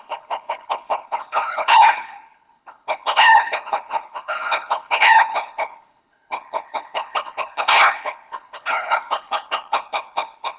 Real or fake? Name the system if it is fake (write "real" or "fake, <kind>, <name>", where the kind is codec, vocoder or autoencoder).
fake, codec, HILCodec